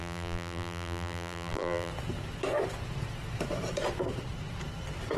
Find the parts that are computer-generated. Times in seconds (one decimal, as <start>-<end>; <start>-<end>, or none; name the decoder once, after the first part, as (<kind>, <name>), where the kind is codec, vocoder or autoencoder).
0.0-1.9 (vocoder, BigVGAN v2)